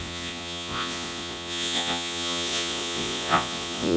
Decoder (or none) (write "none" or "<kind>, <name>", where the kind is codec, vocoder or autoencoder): vocoder, Vocos